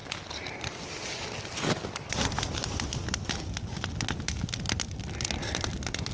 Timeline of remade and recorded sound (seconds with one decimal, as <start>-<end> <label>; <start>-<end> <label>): 0.0-6.1 recorded